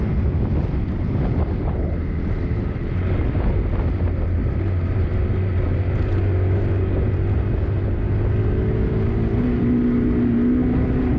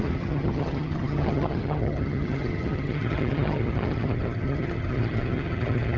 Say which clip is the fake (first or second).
second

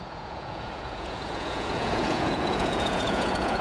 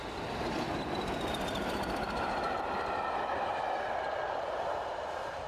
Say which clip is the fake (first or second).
first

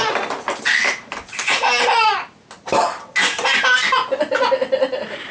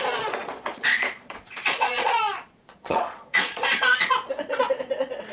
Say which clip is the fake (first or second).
second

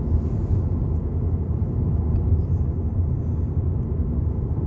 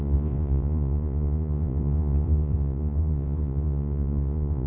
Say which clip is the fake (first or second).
second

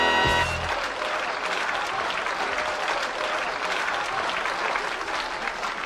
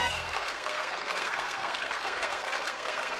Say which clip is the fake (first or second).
second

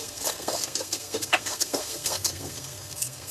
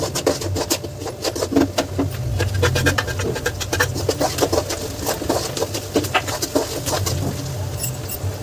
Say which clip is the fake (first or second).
first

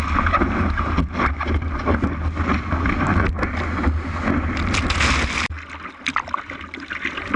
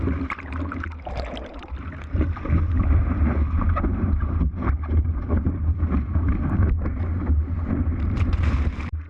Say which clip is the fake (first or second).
second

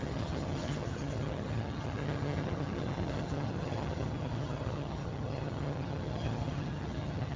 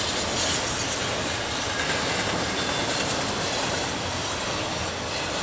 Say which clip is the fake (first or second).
first